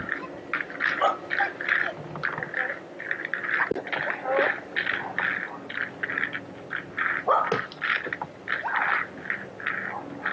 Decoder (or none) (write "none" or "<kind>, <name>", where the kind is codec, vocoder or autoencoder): none